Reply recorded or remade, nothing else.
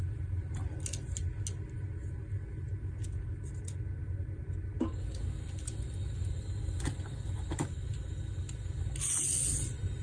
recorded